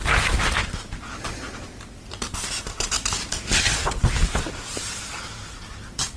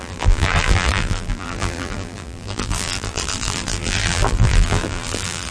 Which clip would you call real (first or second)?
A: first